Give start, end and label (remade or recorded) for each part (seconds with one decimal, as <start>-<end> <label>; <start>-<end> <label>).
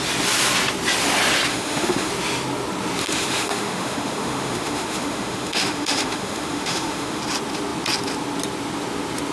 0.0-1.5 recorded; 1.5-2.1 remade; 2.1-3.0 recorded; 3.0-7.2 remade; 7.2-9.3 recorded